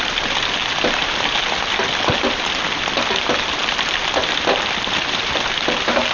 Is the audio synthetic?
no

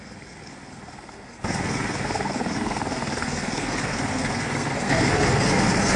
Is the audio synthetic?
yes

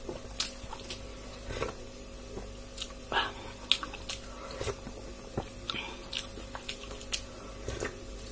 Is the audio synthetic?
no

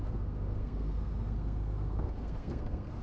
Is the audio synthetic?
yes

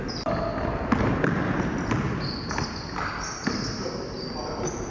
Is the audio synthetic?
no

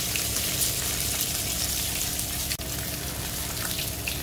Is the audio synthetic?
no